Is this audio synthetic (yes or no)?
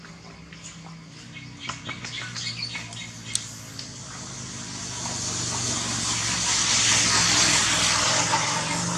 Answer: no